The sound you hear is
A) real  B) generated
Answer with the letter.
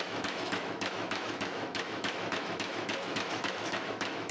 B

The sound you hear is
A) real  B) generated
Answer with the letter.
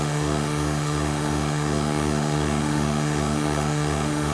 B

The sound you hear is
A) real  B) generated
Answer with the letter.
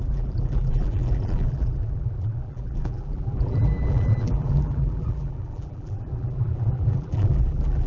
B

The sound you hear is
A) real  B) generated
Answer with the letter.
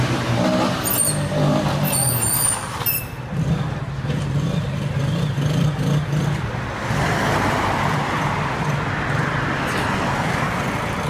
A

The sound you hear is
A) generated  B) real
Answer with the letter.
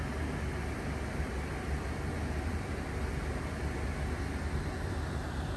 B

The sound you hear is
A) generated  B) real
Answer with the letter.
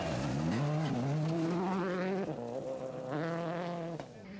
B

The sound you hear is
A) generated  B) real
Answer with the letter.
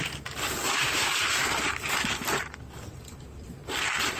A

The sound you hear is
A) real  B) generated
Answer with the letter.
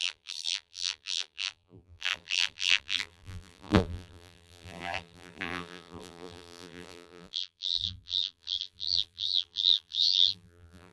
B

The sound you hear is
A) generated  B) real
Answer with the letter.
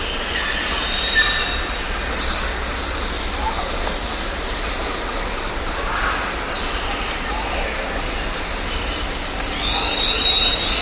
B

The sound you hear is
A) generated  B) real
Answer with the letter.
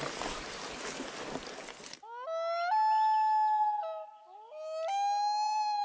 B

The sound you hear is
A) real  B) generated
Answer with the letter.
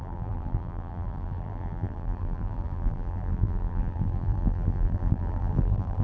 B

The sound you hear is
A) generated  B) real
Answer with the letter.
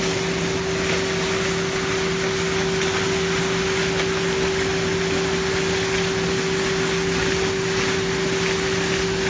B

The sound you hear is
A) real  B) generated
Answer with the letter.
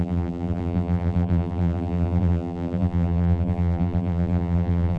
B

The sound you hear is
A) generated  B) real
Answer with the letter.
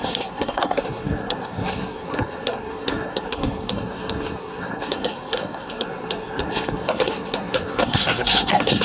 A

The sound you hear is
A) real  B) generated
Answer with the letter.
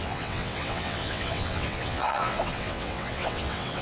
B